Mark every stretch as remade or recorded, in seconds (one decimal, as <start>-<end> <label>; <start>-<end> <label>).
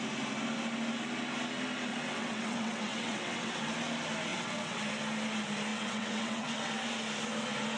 0.0-1.9 recorded; 1.9-3.6 remade; 3.6-4.3 recorded; 4.3-4.8 remade; 4.8-5.7 recorded; 5.7-6.7 remade; 6.7-7.8 recorded